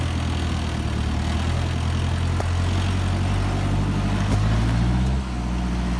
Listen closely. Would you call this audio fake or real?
real